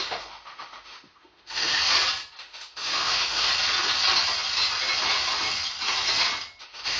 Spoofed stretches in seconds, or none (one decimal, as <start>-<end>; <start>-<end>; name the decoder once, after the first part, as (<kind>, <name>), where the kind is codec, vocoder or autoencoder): 0.0-1.8 (autoencoder, DAC-VAE); 2.4-3.5; 6.6-7.0